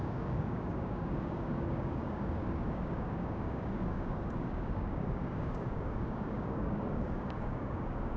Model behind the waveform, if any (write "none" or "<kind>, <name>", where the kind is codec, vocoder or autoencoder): codec, DAC